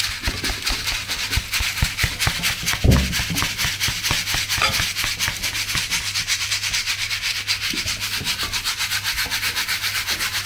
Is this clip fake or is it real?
real